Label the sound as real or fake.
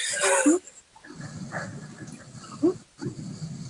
real